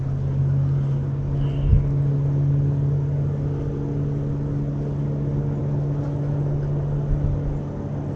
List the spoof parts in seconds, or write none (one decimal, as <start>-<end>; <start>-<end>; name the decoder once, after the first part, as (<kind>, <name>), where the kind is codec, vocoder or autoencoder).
none